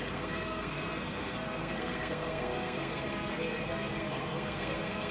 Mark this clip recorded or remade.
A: remade